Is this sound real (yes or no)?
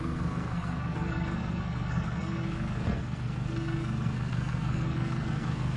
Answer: no